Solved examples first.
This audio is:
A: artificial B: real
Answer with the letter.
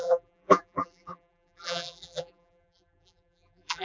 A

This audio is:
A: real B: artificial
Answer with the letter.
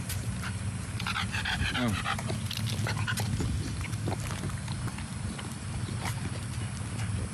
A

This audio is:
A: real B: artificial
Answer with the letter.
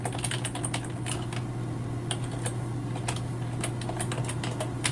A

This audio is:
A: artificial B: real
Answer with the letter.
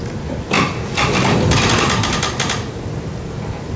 A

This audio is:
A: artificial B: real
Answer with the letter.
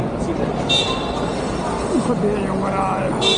B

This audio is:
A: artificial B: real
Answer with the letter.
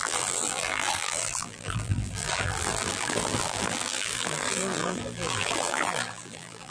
A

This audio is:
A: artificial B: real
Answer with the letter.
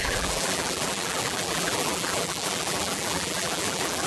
A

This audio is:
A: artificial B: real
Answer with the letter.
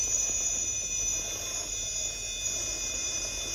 B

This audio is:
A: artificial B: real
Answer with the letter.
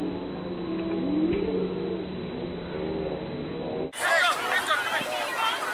B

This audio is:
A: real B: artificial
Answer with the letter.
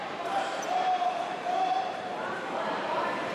B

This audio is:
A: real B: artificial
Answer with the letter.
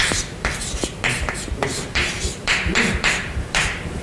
B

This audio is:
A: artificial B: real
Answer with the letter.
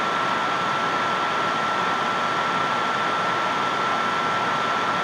B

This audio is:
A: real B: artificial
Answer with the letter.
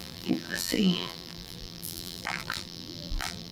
B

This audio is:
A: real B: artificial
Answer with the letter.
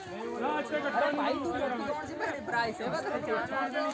A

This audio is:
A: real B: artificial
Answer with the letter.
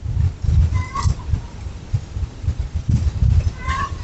B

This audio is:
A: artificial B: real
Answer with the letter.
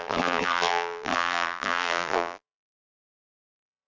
A